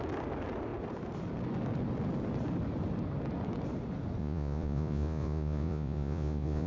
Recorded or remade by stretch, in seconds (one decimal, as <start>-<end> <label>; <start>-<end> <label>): 0.0-4.2 recorded; 4.2-6.7 remade